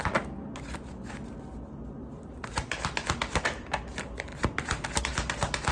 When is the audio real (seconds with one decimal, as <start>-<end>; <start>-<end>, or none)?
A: 0.0-5.7